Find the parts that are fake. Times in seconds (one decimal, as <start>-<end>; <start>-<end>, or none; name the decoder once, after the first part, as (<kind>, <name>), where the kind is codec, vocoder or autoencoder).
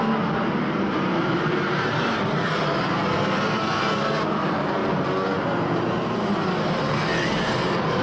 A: 0.0-4.8 (vocoder, BigVGAN v2); 5.4-8.0